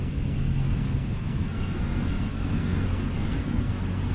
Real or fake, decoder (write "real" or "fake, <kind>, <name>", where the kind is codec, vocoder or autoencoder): fake, codec, SNAC